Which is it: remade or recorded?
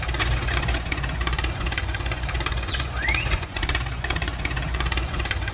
remade